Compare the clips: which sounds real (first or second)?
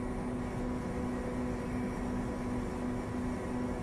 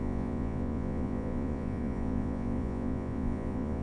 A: first